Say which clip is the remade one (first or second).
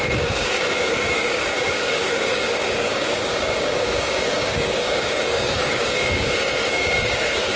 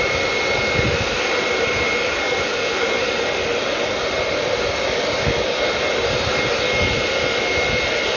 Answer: first